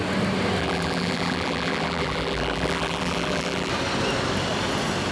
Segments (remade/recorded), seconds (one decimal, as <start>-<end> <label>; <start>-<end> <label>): 0.0-0.6 recorded; 0.6-3.7 remade; 3.7-5.1 recorded